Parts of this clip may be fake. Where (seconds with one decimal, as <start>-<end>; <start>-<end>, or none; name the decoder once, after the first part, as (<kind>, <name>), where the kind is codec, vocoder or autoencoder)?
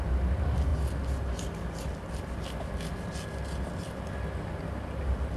none